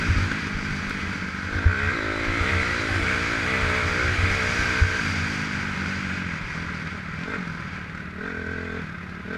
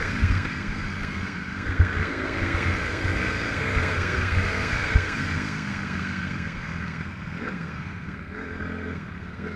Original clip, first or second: first